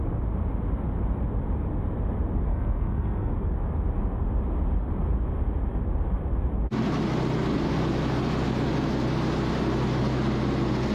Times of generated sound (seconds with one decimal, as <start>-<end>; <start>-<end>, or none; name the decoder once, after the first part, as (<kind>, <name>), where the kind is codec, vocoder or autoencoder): 2.5-3.3 (codec, SNAC)